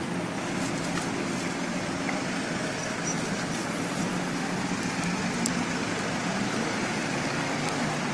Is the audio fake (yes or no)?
no